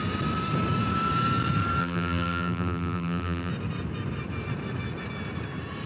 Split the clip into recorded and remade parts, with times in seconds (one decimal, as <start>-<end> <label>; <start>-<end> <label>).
0.0-1.8 recorded; 1.8-3.5 remade; 3.5-5.9 recorded